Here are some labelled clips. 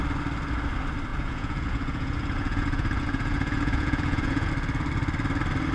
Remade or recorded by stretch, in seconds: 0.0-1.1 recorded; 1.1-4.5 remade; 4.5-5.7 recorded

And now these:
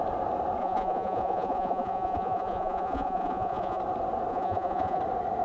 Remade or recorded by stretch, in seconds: 0.0-0.6 recorded; 0.6-3.8 remade; 3.8-4.3 recorded; 4.3-5.0 remade; 5.0-5.4 recorded

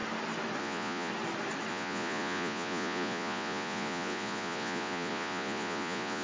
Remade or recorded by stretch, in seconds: 0.0-0.6 recorded; 0.6-1.1 remade; 1.1-1.7 recorded; 1.7-6.2 remade

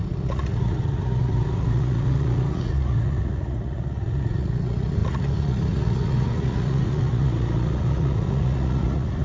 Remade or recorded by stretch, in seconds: 0.0-9.2 remade

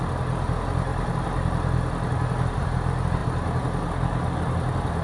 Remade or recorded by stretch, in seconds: 0.0-5.0 recorded

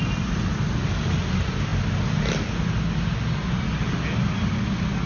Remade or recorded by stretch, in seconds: 0.0-5.1 recorded